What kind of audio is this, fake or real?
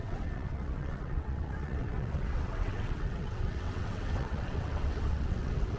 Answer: fake